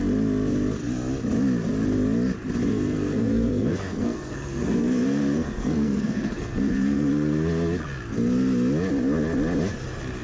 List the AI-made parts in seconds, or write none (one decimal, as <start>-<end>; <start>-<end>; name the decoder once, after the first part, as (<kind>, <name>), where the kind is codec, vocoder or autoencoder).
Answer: 2.7-7.1 (codec, SNAC)